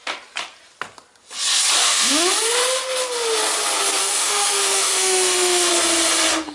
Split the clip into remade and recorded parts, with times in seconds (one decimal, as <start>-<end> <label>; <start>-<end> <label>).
0.0-1.8 recorded; 1.8-2.3 remade; 2.3-4.0 recorded; 4.0-5.7 remade; 5.7-6.5 recorded